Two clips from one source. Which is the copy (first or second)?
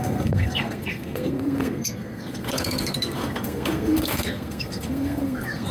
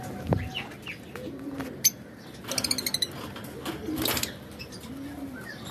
first